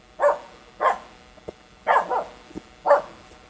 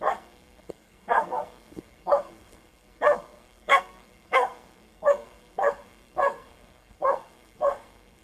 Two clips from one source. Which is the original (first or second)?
first